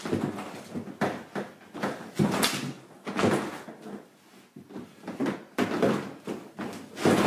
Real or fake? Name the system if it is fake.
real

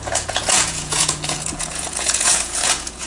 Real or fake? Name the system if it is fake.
fake, vocoder, Vocos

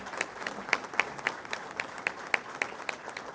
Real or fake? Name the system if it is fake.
real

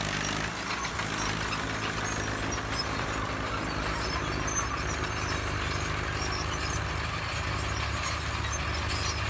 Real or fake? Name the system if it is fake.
real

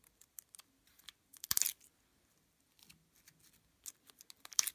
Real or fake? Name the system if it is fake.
real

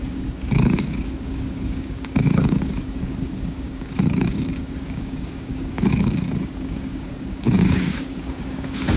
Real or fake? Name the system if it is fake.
fake, codec, DAC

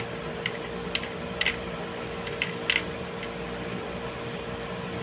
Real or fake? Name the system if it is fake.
real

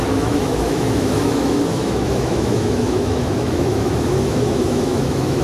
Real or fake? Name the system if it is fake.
fake, autoencoder, DAC-VAE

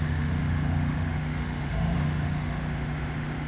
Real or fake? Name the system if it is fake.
fake, autoencoder, DAC-VAE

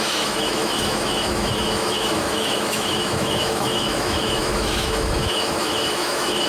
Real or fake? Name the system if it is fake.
fake, autoencoder, DAC-VAE